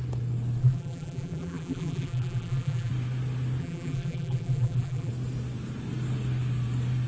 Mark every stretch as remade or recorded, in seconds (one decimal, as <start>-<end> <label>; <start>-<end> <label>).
0.0-0.6 recorded; 0.6-2.9 remade; 2.9-3.6 recorded; 3.6-5.1 remade; 5.1-7.1 recorded

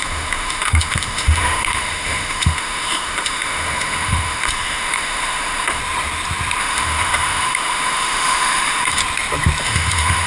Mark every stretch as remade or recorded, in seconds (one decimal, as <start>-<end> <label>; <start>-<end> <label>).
0.0-5.8 remade; 5.8-6.6 recorded; 6.6-9.0 remade; 9.0-9.6 recorded; 9.6-10.3 remade

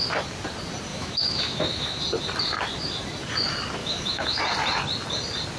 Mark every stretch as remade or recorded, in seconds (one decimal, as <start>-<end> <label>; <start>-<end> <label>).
0.0-0.9 recorded; 0.9-2.0 remade; 2.0-3.8 recorded; 3.8-4.4 remade; 4.4-5.6 recorded

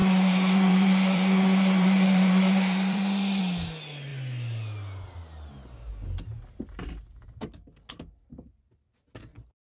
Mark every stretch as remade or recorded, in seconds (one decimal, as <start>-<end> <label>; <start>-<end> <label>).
0.0-3.4 remade; 3.4-9.6 recorded

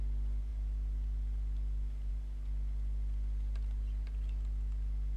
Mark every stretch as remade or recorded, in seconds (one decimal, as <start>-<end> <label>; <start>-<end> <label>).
0.0-5.2 recorded

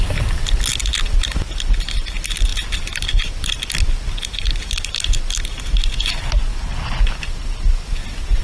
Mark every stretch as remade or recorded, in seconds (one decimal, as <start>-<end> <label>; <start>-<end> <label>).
0.0-0.8 recorded; 0.8-2.1 remade; 2.1-2.5 recorded; 2.5-5.9 remade; 5.9-8.4 recorded